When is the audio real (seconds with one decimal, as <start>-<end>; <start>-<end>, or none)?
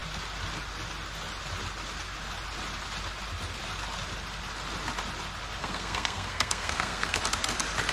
0.0-5.6; 7.2-7.9